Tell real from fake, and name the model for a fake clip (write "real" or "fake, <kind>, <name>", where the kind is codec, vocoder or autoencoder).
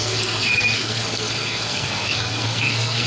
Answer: fake, codec, SNAC